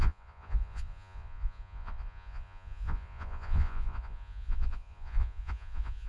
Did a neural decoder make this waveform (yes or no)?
yes